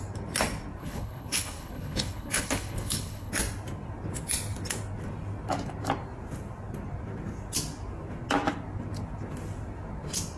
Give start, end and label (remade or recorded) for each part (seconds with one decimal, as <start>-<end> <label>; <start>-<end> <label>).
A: 0.0-0.8 recorded; 0.8-3.3 remade; 3.3-10.4 recorded